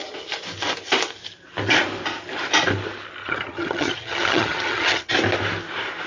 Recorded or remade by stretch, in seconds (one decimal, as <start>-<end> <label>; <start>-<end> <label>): 0.0-3.2 recorded; 3.2-5.1 remade; 5.1-6.1 recorded